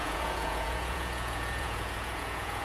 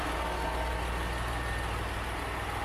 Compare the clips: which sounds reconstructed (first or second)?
first